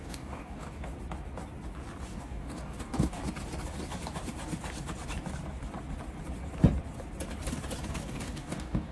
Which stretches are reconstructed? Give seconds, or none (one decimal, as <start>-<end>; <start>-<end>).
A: 0.0-0.9; 2.1-3.2; 7.9-8.9